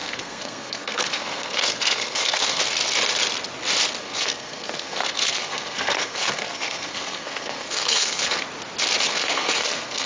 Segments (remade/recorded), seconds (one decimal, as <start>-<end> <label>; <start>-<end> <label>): 0.0-2.6 remade; 2.6-4.0 recorded; 4.0-8.4 remade; 8.4-9.1 recorded; 9.1-10.1 remade